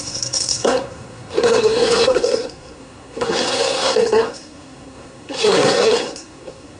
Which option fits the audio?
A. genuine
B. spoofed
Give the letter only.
B